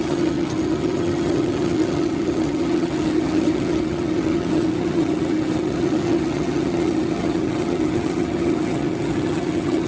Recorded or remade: remade